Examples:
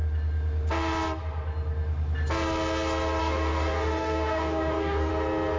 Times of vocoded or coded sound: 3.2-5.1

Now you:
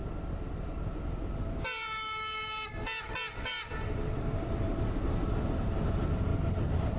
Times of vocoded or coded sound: 4.2-6.3

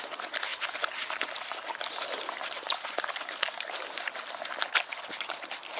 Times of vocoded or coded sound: none

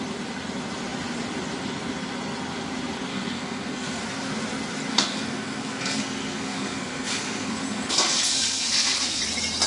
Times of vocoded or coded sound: 3.1-4.0; 4.9-9.2

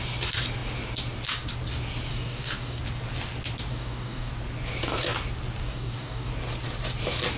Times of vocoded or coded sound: 2.1-2.8; 3.7-4.3; 5.6-6.3

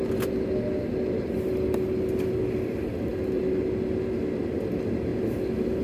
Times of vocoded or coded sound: none

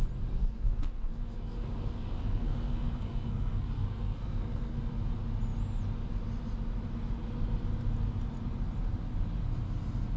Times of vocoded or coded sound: 0.4-4.8

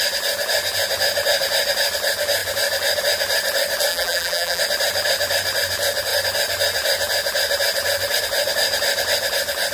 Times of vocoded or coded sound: 3.9-4.6